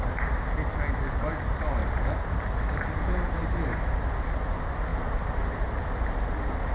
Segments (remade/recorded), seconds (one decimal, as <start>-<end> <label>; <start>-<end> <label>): 0.0-1.8 recorded; 1.8-4.2 remade; 4.2-6.7 recorded